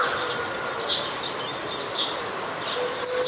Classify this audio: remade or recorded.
recorded